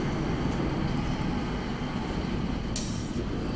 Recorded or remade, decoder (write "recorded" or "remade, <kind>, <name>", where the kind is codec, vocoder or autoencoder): recorded